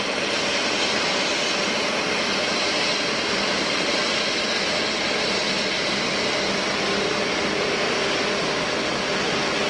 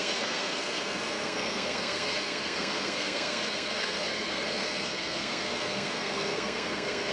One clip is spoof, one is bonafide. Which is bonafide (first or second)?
first